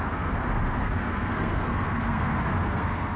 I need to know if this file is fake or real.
fake